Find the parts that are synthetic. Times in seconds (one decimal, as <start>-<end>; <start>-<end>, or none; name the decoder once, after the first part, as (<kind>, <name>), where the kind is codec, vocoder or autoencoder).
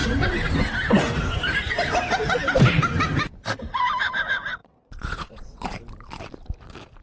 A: 4.6-5.8 (vocoder, Vocos)